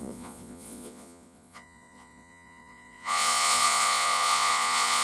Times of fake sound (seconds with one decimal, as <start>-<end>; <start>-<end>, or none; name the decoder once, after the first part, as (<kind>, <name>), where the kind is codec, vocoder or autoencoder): 0.0-5.0 (vocoder, Vocos)

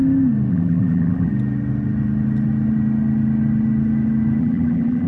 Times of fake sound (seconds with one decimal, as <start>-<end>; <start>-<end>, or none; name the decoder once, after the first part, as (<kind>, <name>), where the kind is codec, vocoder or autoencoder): 0.5-1.3 (vocoder, BigVGAN v2); 4.4-5.1

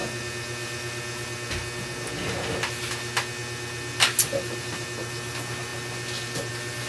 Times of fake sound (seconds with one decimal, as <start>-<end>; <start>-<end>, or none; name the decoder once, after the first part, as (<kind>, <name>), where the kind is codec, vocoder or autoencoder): none

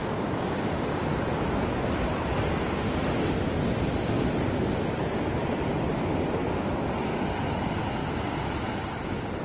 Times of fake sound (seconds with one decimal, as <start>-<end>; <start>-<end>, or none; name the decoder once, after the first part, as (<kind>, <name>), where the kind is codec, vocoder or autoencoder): 0.0-1.1 (codec, DAC); 8.0-9.4